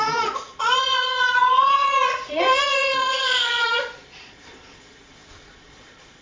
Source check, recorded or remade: remade